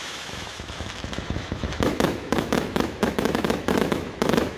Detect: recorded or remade remade